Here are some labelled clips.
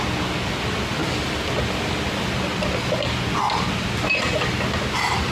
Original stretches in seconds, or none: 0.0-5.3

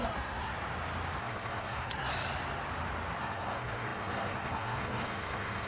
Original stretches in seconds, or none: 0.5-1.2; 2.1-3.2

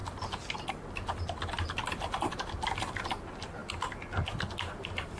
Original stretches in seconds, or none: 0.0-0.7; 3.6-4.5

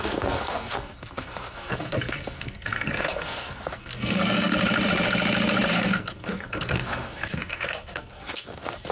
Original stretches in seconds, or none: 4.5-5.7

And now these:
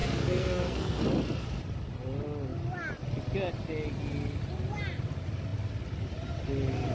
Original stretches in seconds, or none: 1.0-6.9

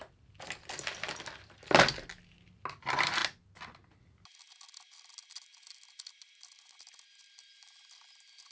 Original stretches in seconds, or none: 0.0-8.5

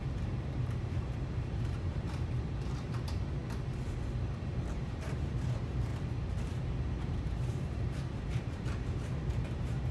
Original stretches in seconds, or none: 3.4-4.7; 5.9-7.0